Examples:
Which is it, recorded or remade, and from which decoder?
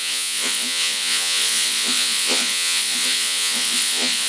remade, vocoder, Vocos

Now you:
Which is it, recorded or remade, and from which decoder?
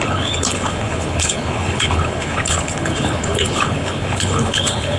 remade, codec, HILCodec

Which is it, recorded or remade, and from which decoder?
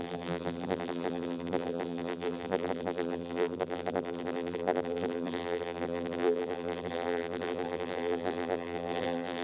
remade, vocoder, BigVGAN v2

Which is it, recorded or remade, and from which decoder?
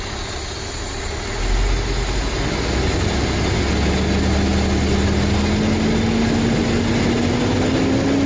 recorded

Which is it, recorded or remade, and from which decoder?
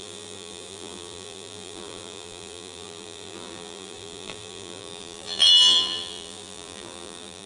remade, vocoder, BigVGAN v2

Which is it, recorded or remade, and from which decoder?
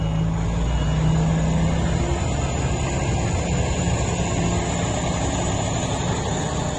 recorded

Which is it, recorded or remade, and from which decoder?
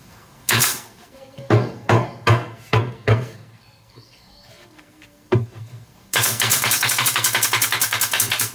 remade, codec, SNAC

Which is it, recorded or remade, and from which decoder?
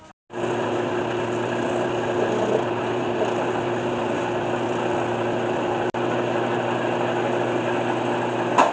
recorded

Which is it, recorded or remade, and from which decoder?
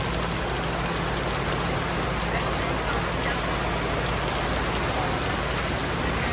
recorded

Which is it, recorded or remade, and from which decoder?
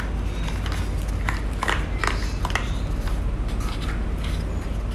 recorded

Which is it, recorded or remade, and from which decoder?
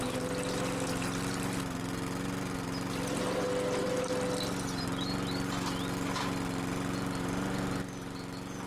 recorded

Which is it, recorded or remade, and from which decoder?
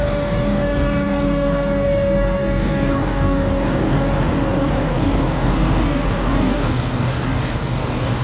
remade, codec, DAC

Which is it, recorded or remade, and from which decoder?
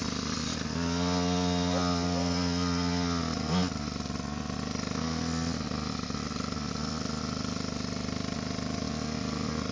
recorded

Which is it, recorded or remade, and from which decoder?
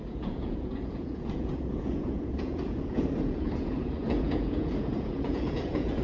remade, vocoder, Vocos